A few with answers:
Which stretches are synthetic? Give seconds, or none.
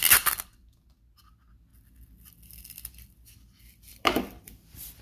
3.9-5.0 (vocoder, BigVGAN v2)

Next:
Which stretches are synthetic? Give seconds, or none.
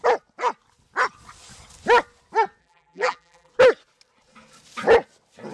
2.6-3.5 (vocoder, BigVGAN v2)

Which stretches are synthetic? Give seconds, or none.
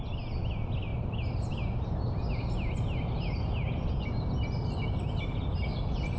none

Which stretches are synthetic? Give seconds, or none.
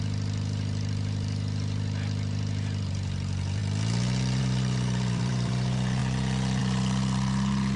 0.0-3.6 (vocoder, BigVGAN v2); 4.4-6.0; 6.6-7.8